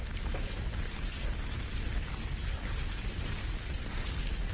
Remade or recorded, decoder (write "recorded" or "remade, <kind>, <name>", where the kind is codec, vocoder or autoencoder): recorded